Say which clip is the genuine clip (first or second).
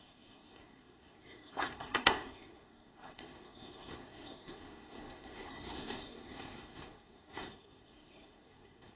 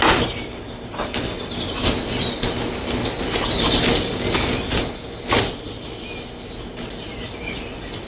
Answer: second